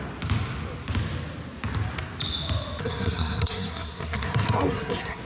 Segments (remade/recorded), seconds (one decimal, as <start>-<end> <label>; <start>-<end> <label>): 0.0-2.8 recorded; 2.8-5.2 remade